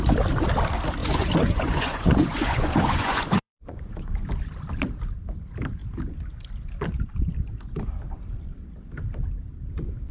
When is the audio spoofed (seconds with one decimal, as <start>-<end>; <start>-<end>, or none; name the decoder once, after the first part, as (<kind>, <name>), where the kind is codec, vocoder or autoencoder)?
1.0-4.3 (vocoder, Vocos)